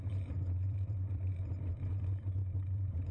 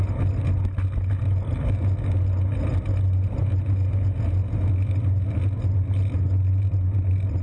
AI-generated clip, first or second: first